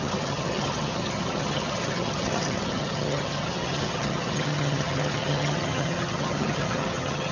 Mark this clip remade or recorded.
remade